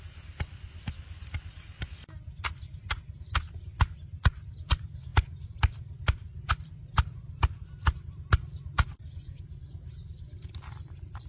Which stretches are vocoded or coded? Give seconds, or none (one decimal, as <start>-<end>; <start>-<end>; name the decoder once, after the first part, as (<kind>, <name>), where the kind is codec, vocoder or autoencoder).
none